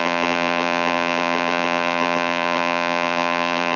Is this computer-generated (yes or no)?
yes